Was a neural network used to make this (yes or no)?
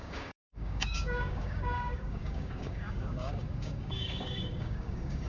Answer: yes